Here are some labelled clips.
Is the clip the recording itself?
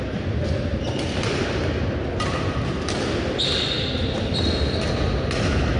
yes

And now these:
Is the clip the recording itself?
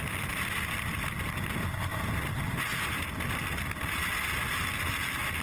yes